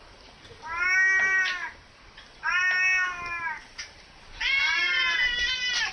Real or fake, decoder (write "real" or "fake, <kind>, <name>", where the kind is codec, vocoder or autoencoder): real